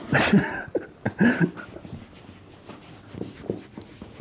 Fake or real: real